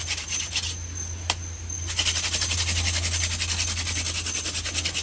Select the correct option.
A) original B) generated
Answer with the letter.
A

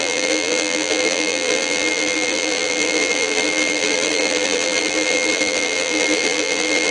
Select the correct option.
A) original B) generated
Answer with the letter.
B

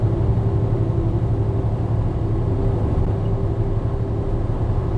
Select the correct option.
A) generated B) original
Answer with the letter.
B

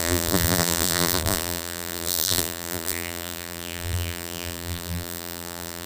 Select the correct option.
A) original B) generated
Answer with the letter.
B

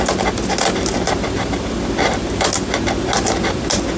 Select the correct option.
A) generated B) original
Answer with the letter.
B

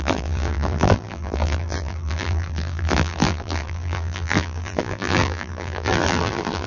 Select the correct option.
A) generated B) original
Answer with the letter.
A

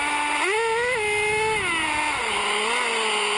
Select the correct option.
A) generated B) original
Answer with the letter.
B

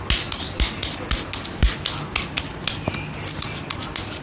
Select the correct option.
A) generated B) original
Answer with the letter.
B